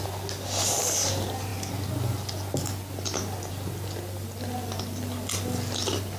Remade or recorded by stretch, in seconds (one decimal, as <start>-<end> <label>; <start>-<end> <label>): 0.0-6.2 recorded